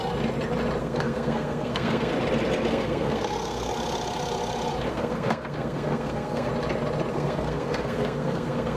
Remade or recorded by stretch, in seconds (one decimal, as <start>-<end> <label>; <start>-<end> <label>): 0.0-0.8 recorded; 0.8-2.1 remade; 2.1-2.7 recorded; 2.7-3.7 remade; 3.7-4.9 recorded; 4.9-6.5 remade; 6.5-7.1 recorded; 7.1-8.8 remade